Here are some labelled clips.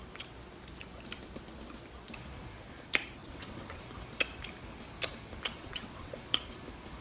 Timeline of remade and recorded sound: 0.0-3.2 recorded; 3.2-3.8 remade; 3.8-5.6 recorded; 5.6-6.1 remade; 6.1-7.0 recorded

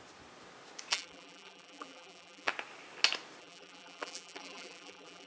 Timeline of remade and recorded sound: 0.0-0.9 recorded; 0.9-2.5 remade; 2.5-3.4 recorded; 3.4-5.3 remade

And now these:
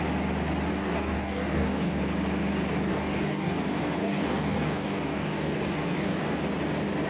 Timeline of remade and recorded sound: 0.0-0.7 recorded; 0.7-2.0 remade; 2.0-2.9 recorded; 2.9-3.6 remade; 3.6-4.0 recorded; 4.0-6.4 remade; 6.4-7.1 recorded